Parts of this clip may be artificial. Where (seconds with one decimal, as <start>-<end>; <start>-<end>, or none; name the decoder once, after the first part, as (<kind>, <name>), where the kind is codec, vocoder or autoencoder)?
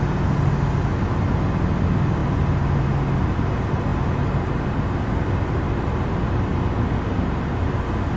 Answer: none